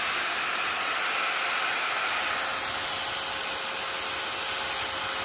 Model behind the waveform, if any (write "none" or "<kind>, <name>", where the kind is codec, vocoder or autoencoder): none